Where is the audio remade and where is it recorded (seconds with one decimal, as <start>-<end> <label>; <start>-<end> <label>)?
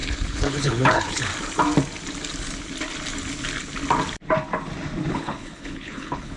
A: 0.0-1.3 remade; 1.3-5.1 recorded; 5.1-6.4 remade